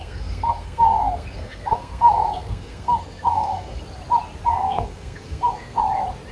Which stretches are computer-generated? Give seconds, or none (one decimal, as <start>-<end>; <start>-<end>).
0.0-3.8; 4.5-5.8